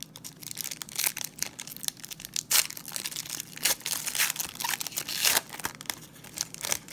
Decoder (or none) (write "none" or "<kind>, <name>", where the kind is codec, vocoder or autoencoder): none